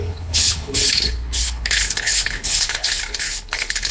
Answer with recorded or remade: remade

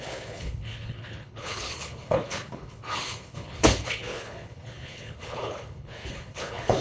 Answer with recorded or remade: remade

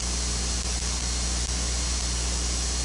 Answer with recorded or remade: recorded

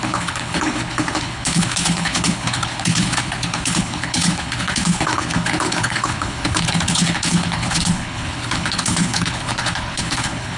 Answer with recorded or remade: remade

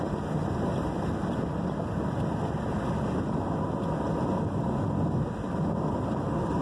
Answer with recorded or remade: recorded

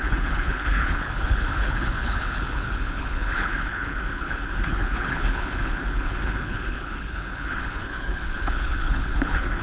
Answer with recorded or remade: remade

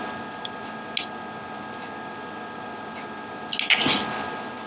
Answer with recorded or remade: recorded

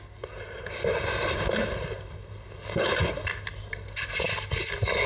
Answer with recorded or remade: recorded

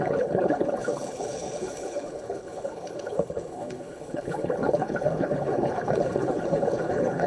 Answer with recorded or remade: remade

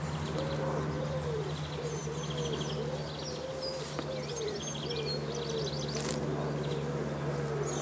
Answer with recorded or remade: recorded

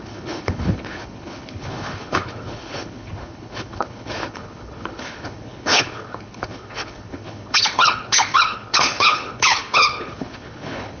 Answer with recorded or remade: remade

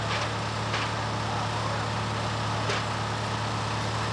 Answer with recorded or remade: recorded